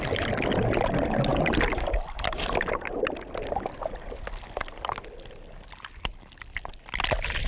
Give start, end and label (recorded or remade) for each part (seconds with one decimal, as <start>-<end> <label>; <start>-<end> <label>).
0.0-7.5 recorded

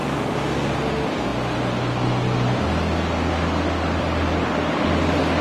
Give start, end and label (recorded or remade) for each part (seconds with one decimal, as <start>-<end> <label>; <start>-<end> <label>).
0.0-5.4 recorded

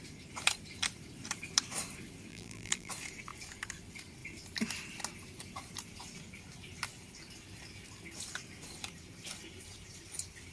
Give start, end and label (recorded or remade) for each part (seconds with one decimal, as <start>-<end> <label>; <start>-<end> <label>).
0.0-2.3 recorded; 2.3-2.9 remade; 2.9-10.5 recorded

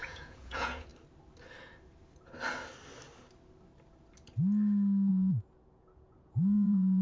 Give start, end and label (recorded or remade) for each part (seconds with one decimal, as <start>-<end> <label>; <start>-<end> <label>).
0.0-0.9 remade; 0.9-5.1 recorded; 5.1-7.0 remade

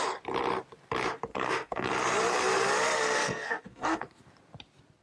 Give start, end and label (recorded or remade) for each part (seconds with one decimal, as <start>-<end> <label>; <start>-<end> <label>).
0.0-1.3 recorded; 1.3-1.9 remade; 1.9-3.2 recorded; 3.2-4.2 remade; 4.2-5.0 recorded